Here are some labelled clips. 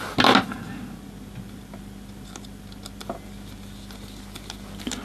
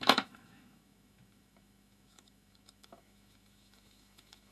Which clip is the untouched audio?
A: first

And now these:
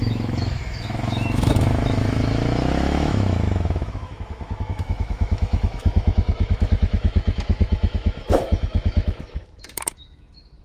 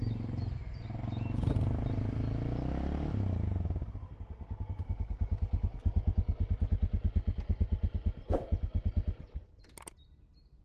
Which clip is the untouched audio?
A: second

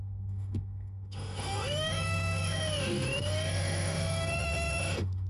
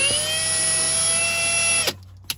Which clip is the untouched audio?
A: second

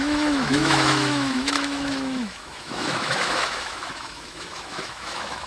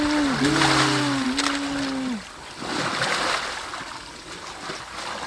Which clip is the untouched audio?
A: second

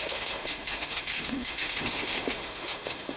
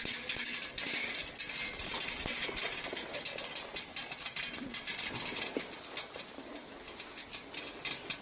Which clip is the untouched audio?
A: second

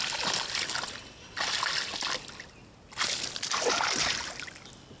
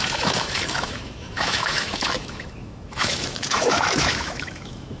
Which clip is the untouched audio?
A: first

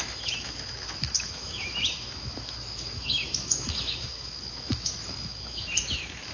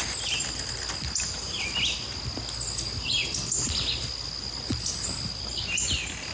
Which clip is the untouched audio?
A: second